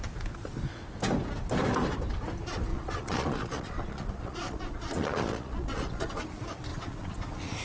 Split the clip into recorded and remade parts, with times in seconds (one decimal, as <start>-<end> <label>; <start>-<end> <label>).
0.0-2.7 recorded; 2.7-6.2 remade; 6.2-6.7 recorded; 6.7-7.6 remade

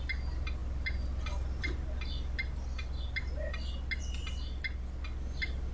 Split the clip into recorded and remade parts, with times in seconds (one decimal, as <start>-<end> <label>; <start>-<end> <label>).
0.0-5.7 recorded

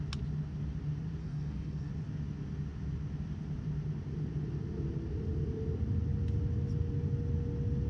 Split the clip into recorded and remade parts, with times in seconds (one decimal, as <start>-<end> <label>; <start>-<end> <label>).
0.0-1.2 recorded; 1.2-1.9 remade; 1.9-7.9 recorded